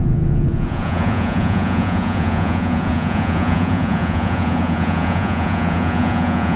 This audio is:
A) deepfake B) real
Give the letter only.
A